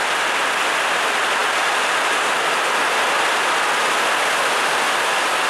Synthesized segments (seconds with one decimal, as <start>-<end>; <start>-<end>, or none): none